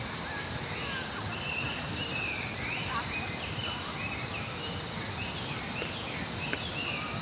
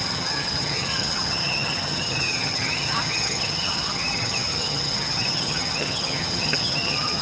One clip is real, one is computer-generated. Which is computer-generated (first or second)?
second